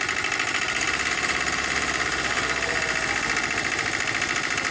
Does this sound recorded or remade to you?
remade